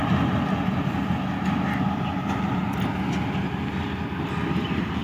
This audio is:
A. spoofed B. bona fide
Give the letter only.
B